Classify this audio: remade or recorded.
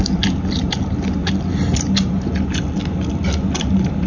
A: recorded